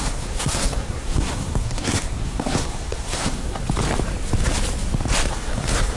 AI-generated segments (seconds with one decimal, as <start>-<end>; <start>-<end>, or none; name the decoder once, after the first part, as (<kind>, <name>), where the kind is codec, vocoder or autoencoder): 0.0-3.6 (codec, SNAC); 5.3-6.0